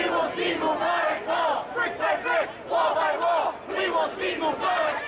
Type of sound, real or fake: real